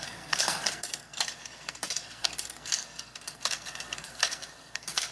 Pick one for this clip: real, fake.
fake